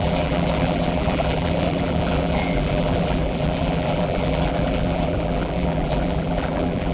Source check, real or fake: fake